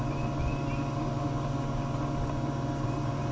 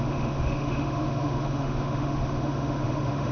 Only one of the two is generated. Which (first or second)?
second